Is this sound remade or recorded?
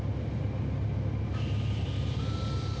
recorded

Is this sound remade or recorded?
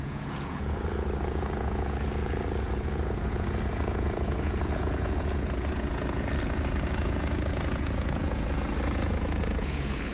remade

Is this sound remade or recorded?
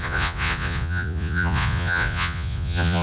remade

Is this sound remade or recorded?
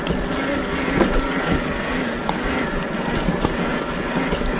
recorded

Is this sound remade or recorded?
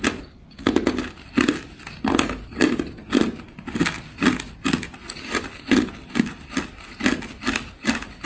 recorded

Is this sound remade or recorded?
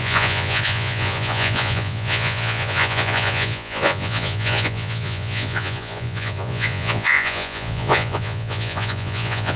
remade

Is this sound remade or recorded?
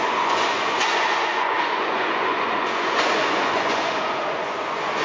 remade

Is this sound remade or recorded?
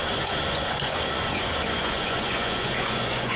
remade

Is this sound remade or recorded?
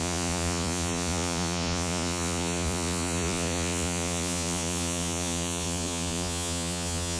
remade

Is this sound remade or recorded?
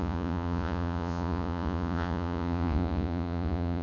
remade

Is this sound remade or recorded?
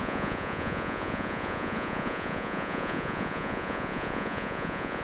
remade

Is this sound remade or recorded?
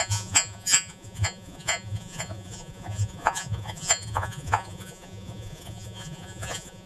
remade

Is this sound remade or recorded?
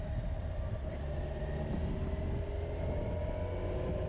recorded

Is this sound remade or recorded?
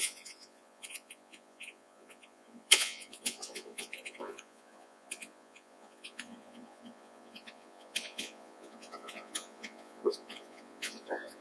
remade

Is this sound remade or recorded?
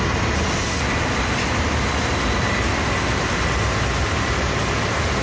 recorded